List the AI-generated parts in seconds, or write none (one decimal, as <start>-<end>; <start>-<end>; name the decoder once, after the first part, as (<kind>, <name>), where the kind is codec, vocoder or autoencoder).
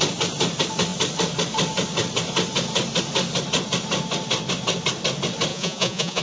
5.5-6.2 (vocoder, Vocos)